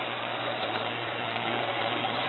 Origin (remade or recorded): remade